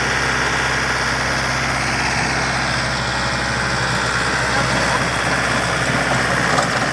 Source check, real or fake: real